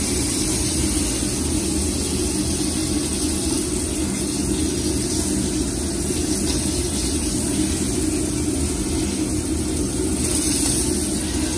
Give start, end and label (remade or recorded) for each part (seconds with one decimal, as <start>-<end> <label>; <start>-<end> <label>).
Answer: 0.0-11.6 recorded